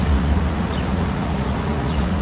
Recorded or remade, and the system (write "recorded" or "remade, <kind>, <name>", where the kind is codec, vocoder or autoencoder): remade, vocoder, Vocos